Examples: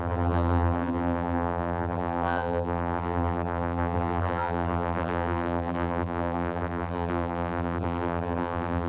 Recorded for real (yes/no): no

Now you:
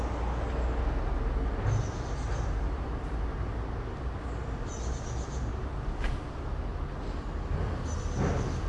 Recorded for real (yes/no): yes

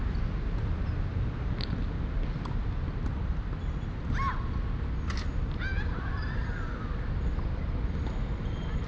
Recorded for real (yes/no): yes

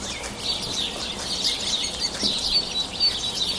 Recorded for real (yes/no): yes